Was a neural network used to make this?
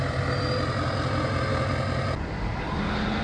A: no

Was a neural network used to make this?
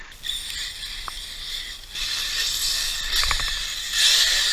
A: no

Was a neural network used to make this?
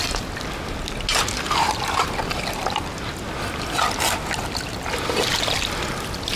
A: no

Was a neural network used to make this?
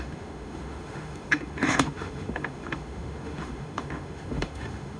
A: yes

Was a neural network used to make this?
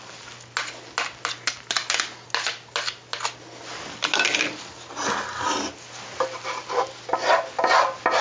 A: no